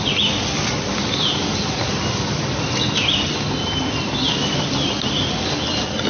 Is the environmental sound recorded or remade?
recorded